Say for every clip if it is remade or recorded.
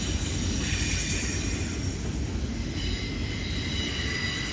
recorded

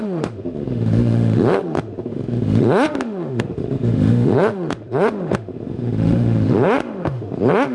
remade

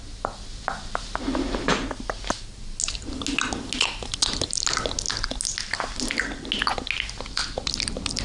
recorded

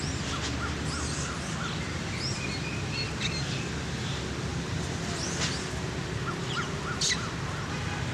recorded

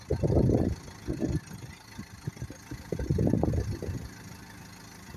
recorded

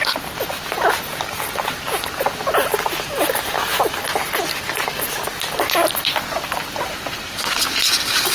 recorded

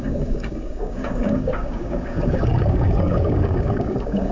remade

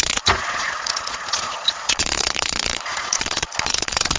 remade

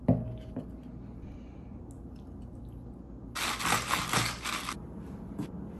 recorded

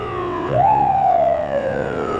remade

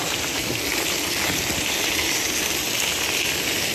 recorded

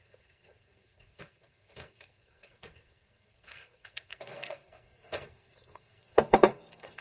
remade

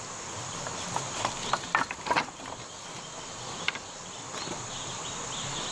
recorded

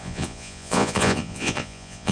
remade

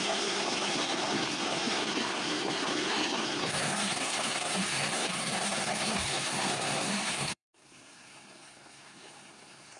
remade